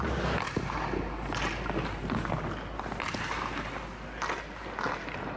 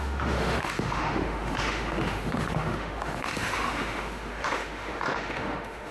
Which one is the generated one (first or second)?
second